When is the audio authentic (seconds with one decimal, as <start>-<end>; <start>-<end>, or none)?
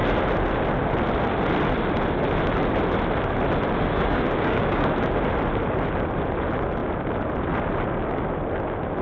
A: 0.0-3.9; 5.2-9.0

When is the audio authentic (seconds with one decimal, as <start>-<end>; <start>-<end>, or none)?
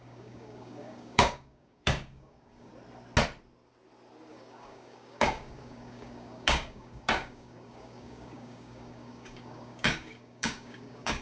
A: 2.7-4.3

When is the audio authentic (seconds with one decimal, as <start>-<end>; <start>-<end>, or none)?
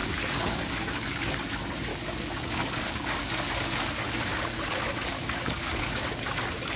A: 1.3-1.9; 5.9-6.8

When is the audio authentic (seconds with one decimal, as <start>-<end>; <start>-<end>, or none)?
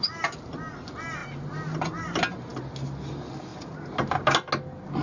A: 0.0-5.0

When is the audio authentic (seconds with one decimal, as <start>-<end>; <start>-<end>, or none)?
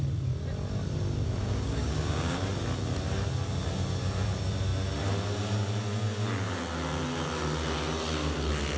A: 0.0-1.4; 2.4-8.8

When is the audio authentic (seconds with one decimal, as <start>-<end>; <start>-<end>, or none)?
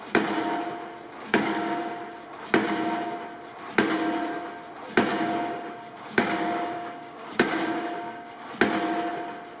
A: 0.0-1.3; 1.9-2.6; 3.2-5.1; 8.5-9.6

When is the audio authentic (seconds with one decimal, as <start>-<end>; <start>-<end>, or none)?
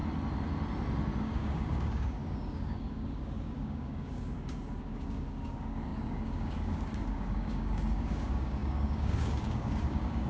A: 0.0-1.2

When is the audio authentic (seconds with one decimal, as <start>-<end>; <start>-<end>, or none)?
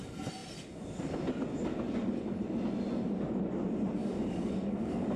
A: 0.0-4.0